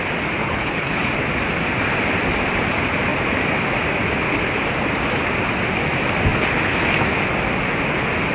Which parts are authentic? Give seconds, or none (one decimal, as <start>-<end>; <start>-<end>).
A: 0.0-0.4; 1.1-8.3